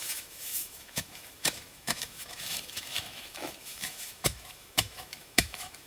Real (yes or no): no